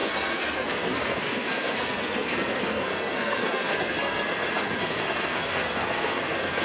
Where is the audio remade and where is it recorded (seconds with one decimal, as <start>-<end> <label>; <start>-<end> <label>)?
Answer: 0.0-6.6 remade